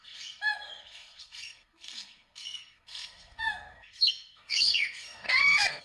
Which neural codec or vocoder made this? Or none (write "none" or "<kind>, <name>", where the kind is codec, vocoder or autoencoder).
codec, SNAC